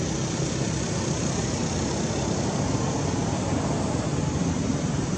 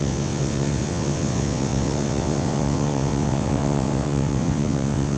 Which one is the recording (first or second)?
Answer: first